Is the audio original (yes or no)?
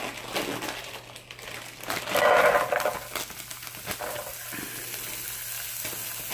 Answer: yes